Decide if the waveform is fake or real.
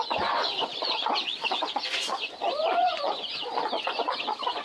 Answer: fake